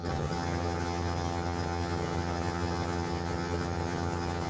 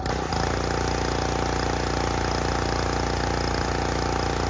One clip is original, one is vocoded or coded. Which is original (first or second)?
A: second